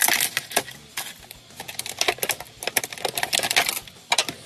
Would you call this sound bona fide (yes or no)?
yes